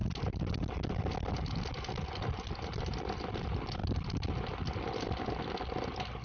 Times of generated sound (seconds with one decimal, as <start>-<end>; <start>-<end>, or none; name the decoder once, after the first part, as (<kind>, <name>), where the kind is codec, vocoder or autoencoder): none

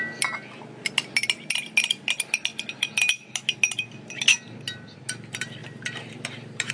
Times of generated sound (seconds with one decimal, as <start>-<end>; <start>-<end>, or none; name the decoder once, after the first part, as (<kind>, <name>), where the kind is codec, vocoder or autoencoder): 5.6-6.7 (vocoder, BigVGAN v2)

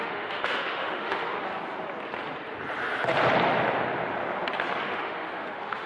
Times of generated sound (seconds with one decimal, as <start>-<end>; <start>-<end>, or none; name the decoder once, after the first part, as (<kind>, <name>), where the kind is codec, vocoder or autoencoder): 0.0-1.3 (autoencoder, DAC-VAE); 4.8-5.9

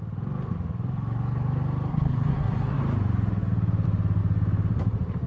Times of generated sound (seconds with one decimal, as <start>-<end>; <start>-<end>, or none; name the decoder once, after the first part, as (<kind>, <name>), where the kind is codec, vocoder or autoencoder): 1.9-2.8 (codec, SNAC)

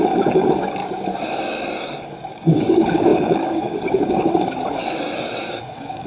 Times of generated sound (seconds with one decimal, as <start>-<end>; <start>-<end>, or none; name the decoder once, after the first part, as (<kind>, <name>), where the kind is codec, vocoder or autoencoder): 0.0-0.8 (codec, DAC); 1.4-6.1